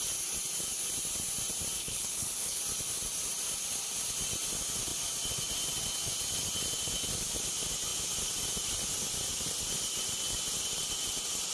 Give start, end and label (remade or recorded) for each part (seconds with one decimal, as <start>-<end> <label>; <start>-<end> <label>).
0.0-1.8 recorded; 1.8-2.6 remade; 2.6-11.5 recorded